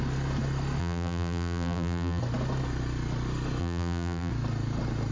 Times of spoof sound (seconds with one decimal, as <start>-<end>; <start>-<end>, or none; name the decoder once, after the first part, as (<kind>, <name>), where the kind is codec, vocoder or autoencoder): 0.8-2.2 (vocoder, BigVGAN v2); 3.6-4.3